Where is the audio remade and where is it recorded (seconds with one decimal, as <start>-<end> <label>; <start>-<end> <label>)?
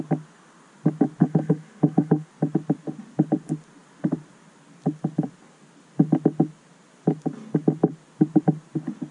0.0-1.2 recorded; 1.2-2.3 remade; 2.3-9.1 recorded